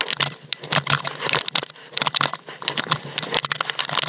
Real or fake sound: real